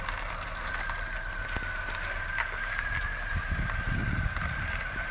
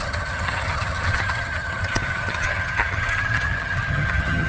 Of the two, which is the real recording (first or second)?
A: first